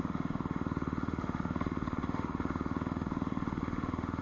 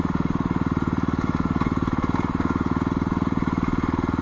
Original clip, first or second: second